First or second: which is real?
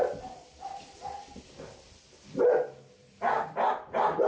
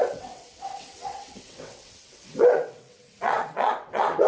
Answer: first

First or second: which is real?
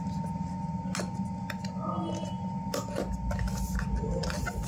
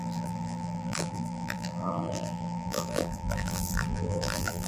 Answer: first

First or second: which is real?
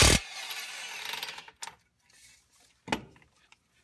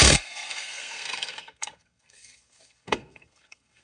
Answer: first